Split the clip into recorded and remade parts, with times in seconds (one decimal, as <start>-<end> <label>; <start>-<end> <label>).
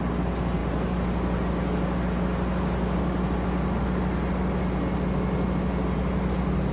0.0-6.7 recorded